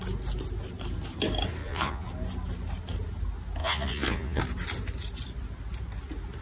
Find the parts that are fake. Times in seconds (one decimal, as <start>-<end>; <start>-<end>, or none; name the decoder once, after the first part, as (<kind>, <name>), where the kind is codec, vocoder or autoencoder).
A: 1.6-2.1 (vocoder, Vocos); 3.6-4.4